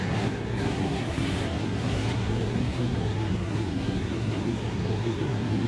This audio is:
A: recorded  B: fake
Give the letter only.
B